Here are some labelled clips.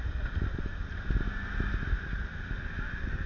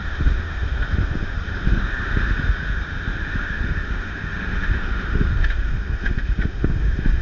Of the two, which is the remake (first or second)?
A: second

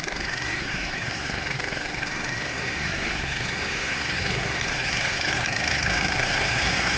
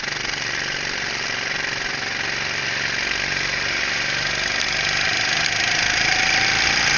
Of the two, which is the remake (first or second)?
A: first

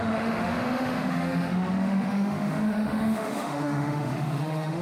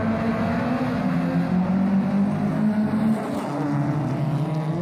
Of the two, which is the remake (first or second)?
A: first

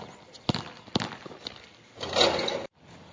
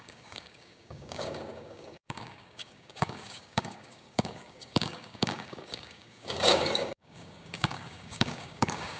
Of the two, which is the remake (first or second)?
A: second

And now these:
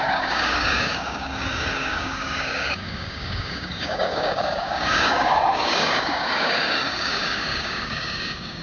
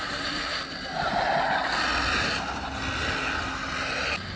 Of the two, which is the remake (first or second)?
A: first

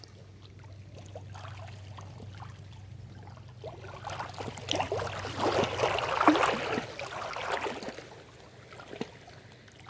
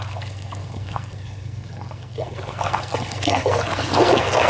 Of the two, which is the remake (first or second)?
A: second